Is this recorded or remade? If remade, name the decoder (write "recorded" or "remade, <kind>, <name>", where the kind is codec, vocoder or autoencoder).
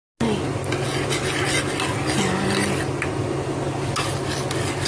recorded